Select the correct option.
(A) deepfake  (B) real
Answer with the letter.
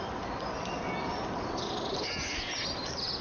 B